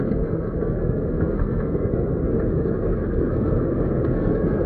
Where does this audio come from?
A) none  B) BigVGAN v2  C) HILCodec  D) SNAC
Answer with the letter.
D